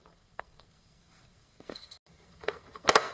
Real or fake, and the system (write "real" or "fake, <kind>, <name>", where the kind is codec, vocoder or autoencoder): fake, codec, SNAC